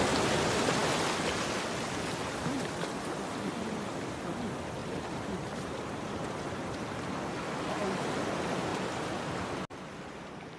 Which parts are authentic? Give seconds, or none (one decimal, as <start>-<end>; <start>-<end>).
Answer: 0.0-4.8; 6.9-8.7; 9.3-10.6